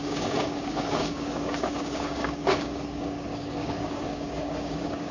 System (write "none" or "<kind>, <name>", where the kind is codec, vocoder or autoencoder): codec, DAC